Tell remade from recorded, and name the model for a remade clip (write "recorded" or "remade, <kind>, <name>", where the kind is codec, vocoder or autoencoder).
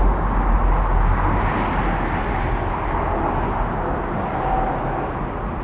recorded